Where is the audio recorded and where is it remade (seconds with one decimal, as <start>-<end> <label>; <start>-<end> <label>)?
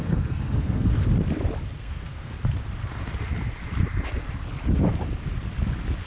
0.0-1.0 remade; 1.0-1.8 recorded; 1.8-2.3 remade; 2.3-6.1 recorded